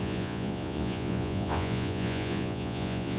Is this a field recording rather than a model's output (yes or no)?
no